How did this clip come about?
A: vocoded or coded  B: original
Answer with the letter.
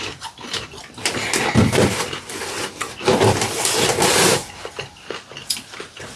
A